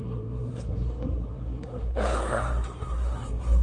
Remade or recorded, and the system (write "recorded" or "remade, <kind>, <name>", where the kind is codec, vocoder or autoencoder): remade, codec, SNAC